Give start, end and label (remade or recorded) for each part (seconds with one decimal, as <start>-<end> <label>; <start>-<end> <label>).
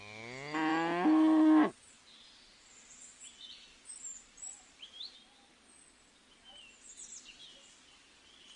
0.0-8.6 recorded